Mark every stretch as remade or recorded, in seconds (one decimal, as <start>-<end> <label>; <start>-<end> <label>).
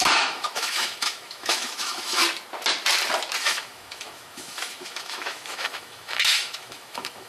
0.0-2.2 remade; 2.2-3.4 recorded; 3.4-7.3 remade